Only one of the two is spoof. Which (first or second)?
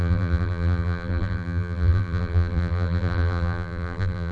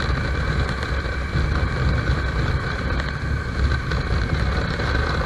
first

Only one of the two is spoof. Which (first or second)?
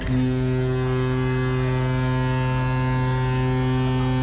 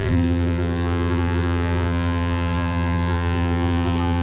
second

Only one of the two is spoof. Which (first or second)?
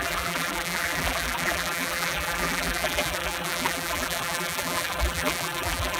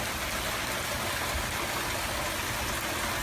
first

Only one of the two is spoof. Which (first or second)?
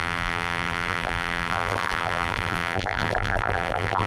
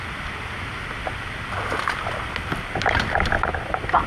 first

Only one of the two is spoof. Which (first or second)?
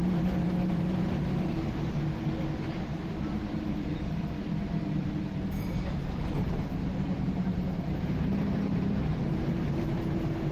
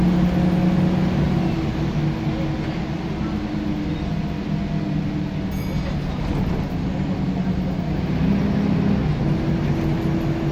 first